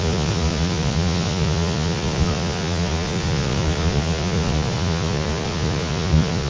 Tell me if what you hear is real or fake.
fake